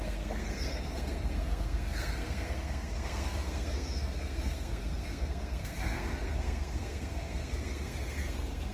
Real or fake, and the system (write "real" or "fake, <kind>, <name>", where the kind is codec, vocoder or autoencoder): fake, codec, SNAC